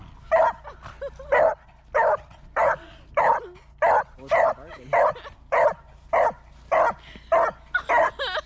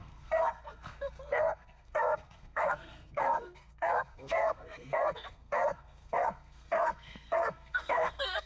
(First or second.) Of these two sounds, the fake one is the second